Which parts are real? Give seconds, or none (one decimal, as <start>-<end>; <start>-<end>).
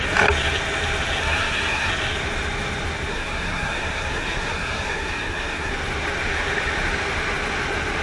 0.0-1.2; 1.9-3.1; 5.7-8.0